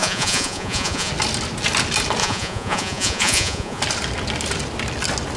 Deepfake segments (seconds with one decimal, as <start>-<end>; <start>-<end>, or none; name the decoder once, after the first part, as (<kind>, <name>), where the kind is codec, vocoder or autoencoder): 0.0-1.1 (vocoder, Vocos); 2.2-3.8